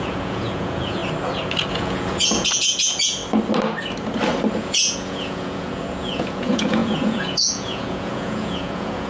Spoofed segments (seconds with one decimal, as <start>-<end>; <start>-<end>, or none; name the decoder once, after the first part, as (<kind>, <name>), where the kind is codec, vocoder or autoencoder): 0.0-1.0 (vocoder, Vocos); 1.7-3.2; 4.5-9.1